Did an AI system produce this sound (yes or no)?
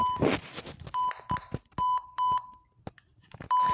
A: no